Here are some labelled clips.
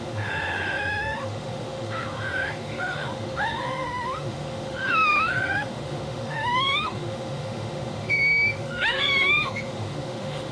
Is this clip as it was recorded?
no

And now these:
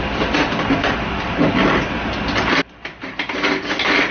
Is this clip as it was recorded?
yes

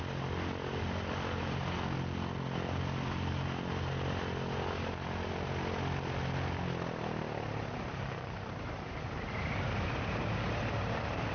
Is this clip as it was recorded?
yes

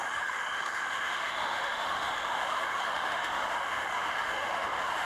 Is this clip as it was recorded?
no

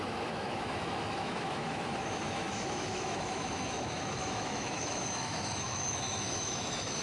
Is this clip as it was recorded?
no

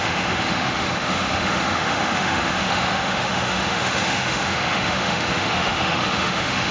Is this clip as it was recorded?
no